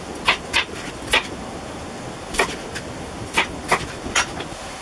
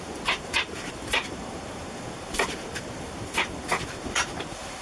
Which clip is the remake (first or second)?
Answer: second